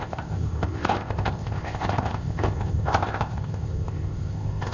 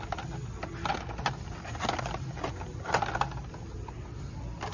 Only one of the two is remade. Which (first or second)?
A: first